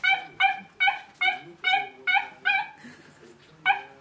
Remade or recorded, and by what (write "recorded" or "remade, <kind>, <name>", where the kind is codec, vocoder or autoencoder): recorded